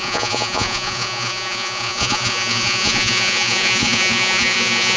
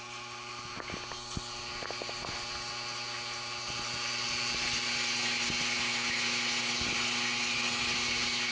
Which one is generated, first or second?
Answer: first